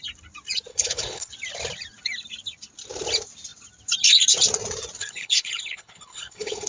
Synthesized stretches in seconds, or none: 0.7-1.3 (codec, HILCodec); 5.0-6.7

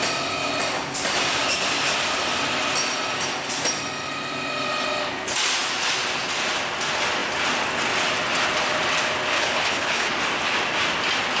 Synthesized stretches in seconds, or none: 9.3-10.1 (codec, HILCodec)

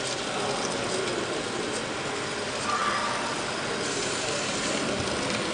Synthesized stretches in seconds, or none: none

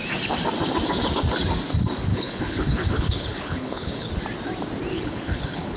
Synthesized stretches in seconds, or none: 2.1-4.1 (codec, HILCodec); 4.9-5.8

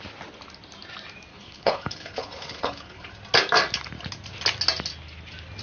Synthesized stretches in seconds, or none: 1.3-3.1 (codec, HILCodec)

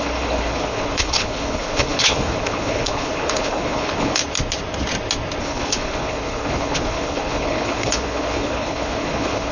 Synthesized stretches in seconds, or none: 0.0-4.2 (codec, HILCodec); 5.4-9.5

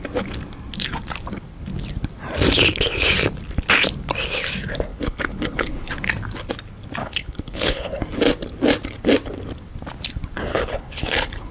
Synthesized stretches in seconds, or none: 4.9-5.9 (codec, HILCodec); 7.0-7.9; 10.5-11.5

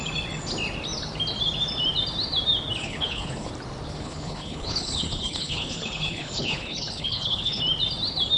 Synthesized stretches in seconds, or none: 2.8-3.5 (codec, HILCodec); 3.9-7.6